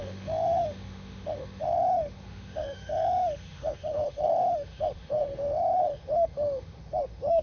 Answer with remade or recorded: remade